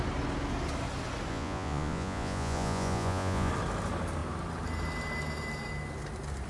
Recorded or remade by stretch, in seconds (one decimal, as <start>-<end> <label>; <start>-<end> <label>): 0.0-1.3 recorded; 1.3-3.5 remade; 3.5-6.5 recorded